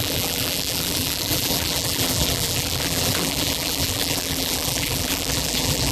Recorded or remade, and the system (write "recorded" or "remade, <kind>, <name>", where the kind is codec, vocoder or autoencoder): remade, vocoder, BigVGAN v2